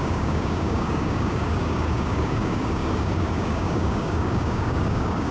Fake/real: fake